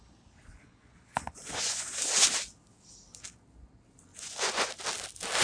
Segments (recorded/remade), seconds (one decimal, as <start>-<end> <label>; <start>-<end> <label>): 0.0-0.5 recorded; 0.5-2.0 remade; 2.0-4.1 recorded; 4.1-4.7 remade; 4.7-5.4 recorded